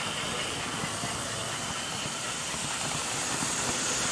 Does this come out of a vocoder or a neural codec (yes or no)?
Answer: yes